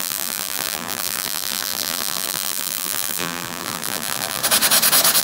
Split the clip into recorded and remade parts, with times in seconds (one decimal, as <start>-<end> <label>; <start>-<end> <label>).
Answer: 0.0-4.4 remade; 4.4-5.2 recorded